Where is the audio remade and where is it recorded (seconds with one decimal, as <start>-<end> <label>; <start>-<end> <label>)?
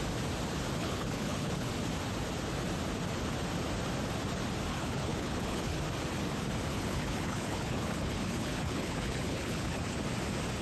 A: 0.0-0.8 recorded; 0.8-1.7 remade; 1.7-4.7 recorded; 4.7-5.8 remade; 5.8-6.7 recorded; 6.7-10.0 remade; 10.0-10.6 recorded